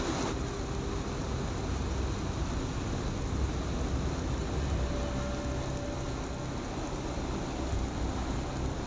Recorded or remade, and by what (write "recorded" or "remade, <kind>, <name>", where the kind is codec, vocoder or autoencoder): recorded